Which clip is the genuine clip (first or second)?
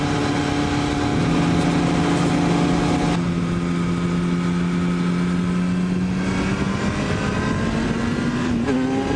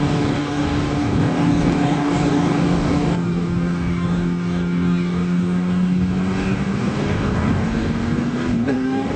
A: first